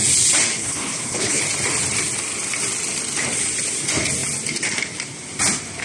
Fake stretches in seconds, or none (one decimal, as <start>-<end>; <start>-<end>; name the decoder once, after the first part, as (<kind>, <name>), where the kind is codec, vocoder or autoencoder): 0.6-1.4 (codec, HILCodec)